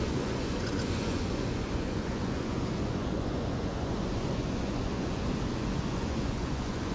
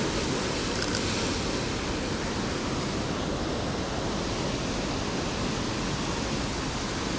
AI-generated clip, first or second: first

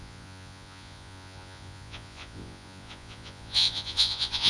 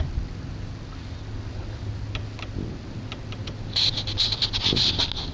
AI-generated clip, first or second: first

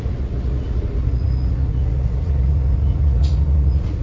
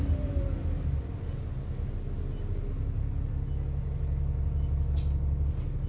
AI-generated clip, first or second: first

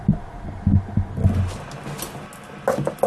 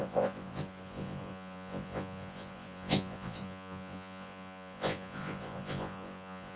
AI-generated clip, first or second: second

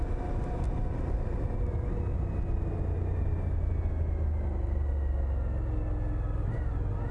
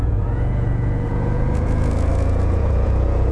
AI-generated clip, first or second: second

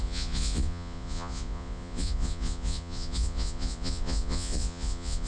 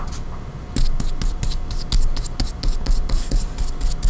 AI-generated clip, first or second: first